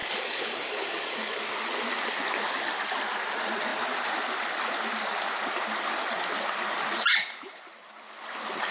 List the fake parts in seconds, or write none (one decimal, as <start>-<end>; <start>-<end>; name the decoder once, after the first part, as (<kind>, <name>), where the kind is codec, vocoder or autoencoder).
0.0-1.4 (codec, DAC)